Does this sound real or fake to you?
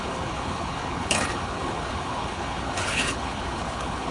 fake